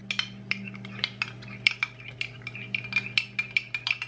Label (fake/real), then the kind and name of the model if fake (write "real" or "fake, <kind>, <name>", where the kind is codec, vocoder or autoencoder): real